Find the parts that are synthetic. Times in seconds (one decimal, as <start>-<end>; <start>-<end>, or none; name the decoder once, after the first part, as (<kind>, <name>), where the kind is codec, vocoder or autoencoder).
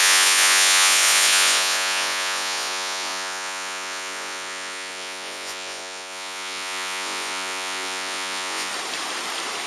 0.0-8.7 (vocoder, Vocos)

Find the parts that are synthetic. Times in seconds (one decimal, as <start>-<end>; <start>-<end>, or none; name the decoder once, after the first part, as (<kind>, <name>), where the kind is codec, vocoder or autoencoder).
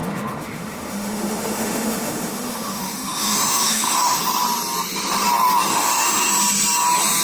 0.0-4.2 (autoencoder, DAC-VAE); 5.7-6.3